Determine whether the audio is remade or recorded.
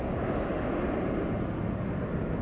recorded